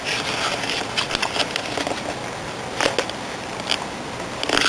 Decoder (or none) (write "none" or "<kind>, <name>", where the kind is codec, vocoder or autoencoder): none